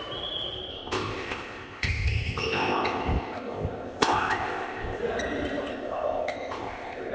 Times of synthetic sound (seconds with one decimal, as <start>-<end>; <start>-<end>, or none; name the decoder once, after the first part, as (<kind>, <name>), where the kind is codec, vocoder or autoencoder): 0.7-5.0 (codec, ZipCodec); 5.7-7.1